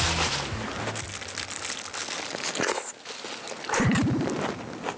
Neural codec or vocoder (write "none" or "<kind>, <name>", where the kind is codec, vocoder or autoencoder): none